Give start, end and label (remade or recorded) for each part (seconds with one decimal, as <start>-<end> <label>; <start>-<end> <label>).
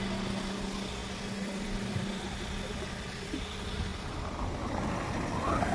0.0-1.0 recorded; 1.0-3.3 remade; 3.3-3.9 recorded; 3.9-4.7 remade; 4.7-5.7 recorded